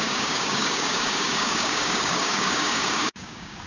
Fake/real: fake